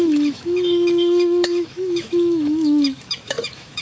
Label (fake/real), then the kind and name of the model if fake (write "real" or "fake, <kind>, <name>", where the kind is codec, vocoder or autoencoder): fake, autoencoder, DAC-VAE